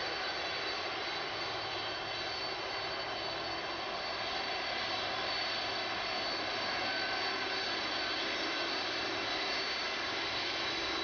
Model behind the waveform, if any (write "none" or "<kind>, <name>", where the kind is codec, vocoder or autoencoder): none